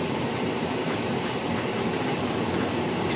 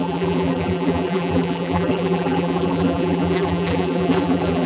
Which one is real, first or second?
first